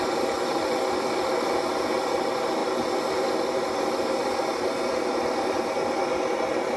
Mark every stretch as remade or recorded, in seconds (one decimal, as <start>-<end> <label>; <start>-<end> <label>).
0.0-6.8 recorded